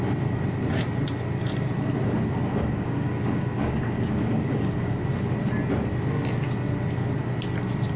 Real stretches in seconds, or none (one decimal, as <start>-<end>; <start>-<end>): 0.0-2.5; 4.9-8.0